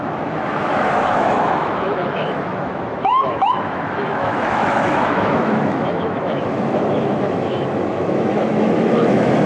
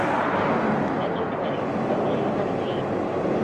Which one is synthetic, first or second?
first